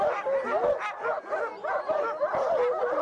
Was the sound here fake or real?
real